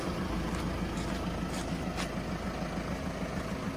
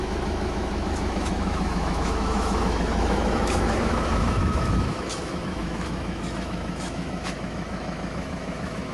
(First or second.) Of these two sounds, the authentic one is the first